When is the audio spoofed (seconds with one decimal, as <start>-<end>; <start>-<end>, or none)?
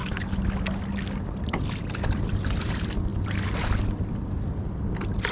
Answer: none